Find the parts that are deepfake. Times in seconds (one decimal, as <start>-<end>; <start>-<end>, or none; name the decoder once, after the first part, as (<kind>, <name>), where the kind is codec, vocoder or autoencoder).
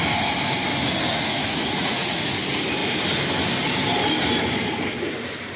1.1-2.4 (vocoder, Vocos)